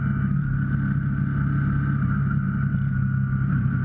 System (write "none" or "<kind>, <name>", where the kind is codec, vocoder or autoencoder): none